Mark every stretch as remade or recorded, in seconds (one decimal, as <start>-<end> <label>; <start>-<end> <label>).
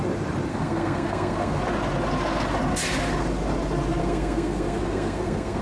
0.0-0.5 recorded; 0.5-1.6 remade; 1.6-4.0 recorded; 4.0-5.6 remade